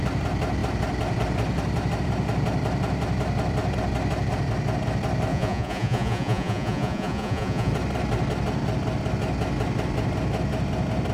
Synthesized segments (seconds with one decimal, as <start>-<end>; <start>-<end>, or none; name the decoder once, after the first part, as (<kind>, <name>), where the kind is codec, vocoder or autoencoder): 5.3-7.7 (vocoder, Vocos)